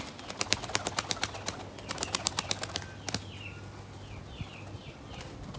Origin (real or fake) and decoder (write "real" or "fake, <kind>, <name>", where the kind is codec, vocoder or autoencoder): real